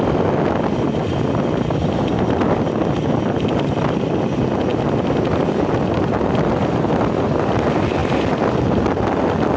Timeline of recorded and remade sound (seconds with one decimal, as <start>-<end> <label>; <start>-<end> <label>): 0.0-9.6 recorded